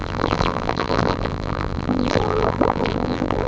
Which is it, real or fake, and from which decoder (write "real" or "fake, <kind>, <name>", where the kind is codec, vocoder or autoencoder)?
fake, vocoder, BigVGAN v2